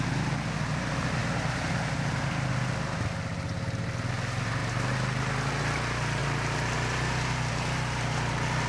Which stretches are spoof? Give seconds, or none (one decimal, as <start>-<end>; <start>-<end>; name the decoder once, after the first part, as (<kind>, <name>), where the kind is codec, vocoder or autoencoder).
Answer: none